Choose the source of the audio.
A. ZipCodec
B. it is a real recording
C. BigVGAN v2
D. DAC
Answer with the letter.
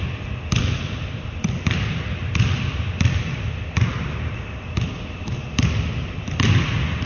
C